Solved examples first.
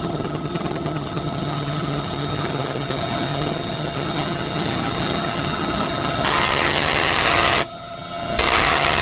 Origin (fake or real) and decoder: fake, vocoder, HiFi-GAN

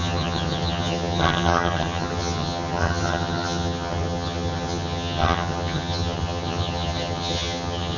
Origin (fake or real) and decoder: fake, vocoder, HiFi-GAN